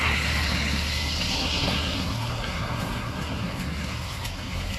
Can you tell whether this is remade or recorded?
remade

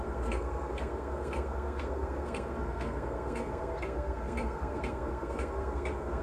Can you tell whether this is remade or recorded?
remade